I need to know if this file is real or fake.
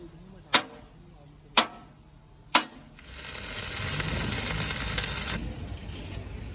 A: real